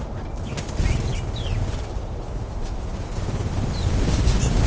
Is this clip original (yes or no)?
yes